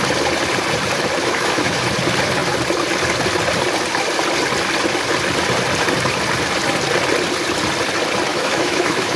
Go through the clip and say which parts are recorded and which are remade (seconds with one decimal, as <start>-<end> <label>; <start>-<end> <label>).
0.0-1.2 recorded; 1.2-1.8 remade; 1.8-8.3 recorded; 8.3-9.2 remade